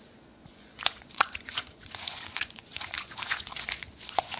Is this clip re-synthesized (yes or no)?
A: yes